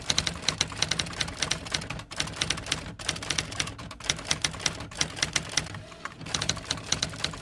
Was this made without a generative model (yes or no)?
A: no